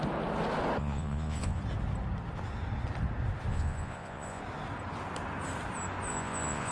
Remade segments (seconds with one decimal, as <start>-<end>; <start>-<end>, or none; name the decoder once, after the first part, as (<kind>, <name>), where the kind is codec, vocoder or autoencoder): 0.8-1.6 (vocoder, Vocos); 3.5-4.4; 6.1-6.7